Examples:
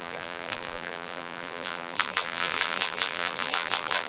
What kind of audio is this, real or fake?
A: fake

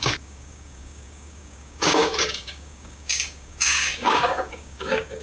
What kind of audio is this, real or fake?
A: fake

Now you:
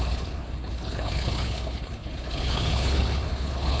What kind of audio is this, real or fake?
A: fake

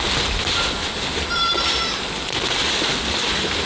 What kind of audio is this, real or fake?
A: real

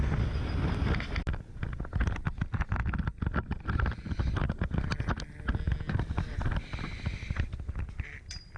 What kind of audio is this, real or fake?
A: real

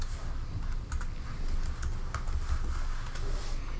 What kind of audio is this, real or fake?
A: real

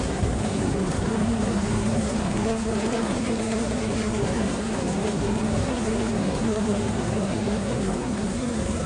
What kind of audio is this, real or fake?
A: fake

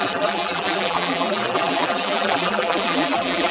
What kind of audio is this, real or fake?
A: fake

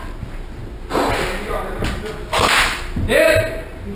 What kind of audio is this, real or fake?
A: real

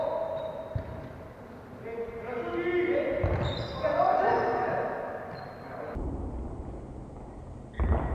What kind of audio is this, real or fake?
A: real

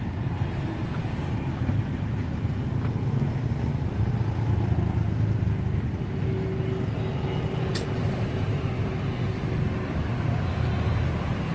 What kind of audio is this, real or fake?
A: real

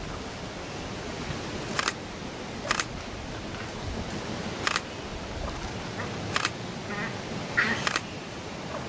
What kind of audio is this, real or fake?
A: real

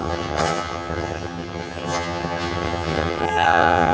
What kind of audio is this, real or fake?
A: fake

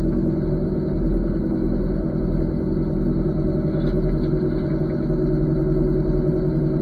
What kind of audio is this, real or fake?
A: real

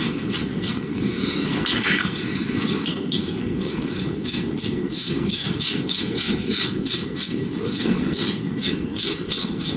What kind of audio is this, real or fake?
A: fake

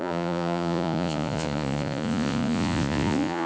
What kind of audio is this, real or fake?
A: fake